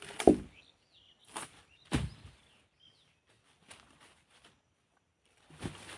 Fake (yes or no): no